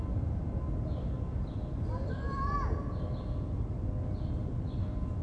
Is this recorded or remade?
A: recorded